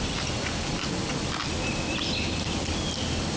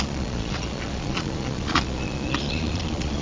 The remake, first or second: second